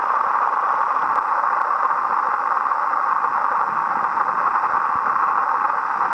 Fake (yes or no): no